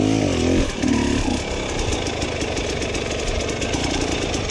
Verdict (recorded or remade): recorded